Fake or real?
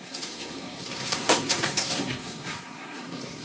fake